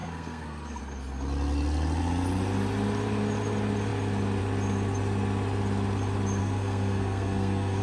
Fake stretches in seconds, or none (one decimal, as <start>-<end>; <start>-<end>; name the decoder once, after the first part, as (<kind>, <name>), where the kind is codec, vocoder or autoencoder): 0.0-0.8 (codec, SNAC); 6.4-7.8